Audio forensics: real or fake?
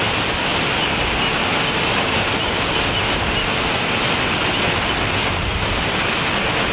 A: real